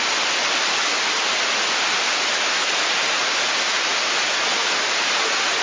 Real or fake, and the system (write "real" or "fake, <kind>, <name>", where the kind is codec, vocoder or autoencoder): real